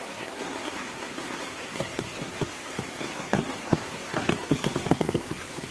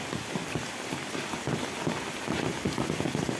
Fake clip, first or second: first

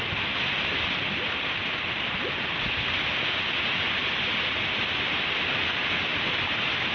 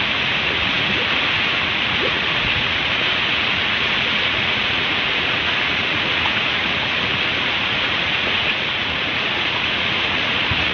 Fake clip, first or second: second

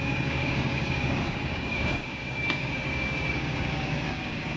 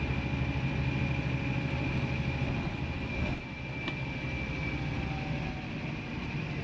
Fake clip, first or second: first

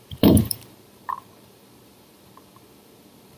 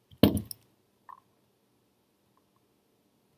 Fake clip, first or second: first